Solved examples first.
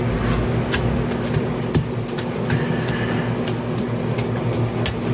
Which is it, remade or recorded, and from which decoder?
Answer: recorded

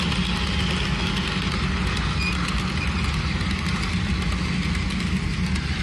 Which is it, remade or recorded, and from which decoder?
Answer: recorded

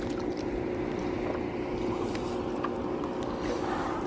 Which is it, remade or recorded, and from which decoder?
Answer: recorded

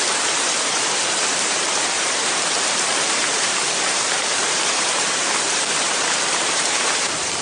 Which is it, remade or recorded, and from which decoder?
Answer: remade, vocoder, BigVGAN v2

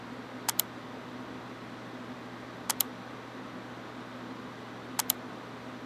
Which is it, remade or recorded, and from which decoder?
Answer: recorded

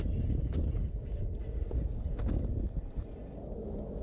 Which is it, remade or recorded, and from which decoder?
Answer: recorded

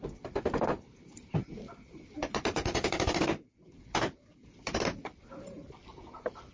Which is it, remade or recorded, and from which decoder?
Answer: recorded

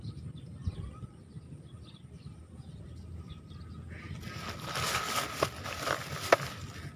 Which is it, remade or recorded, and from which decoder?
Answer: recorded